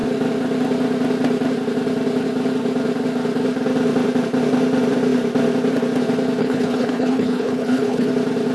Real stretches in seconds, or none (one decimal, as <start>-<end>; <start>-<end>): 0.0-6.4; 8.1-8.5